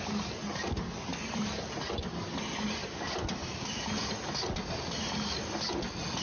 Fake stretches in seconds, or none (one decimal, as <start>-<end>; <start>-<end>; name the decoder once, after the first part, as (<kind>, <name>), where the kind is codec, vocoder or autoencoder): none